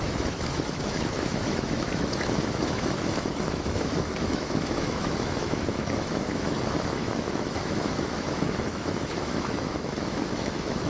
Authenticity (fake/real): fake